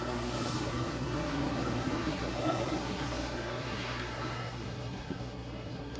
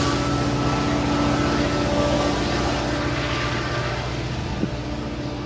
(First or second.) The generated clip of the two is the first